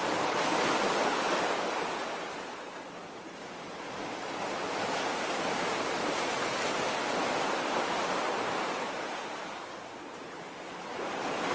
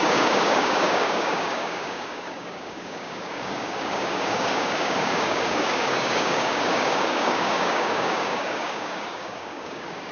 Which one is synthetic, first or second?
second